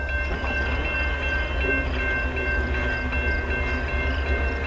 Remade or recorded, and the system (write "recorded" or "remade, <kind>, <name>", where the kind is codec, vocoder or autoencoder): recorded